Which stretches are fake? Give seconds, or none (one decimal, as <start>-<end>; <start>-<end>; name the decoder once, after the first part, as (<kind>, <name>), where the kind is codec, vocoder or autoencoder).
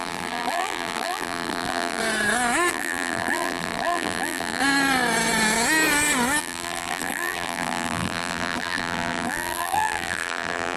0.0-2.0 (vocoder, BigVGAN v2); 2.7-4.6; 6.4-10.8